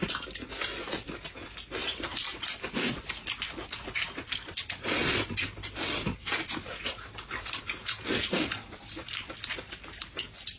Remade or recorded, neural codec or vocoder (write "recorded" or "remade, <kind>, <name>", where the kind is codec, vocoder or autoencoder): recorded